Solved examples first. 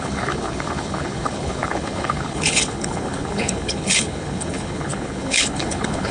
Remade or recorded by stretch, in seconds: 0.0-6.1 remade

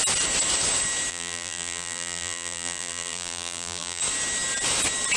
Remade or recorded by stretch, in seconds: 0.0-1.1 recorded; 1.1-4.0 remade; 4.0-5.2 recorded

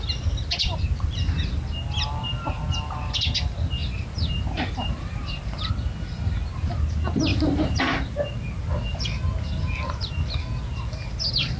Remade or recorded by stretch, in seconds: 0.0-3.8 recorded; 3.8-5.7 remade; 5.7-7.3 recorded; 7.3-7.8 remade; 7.8-11.6 recorded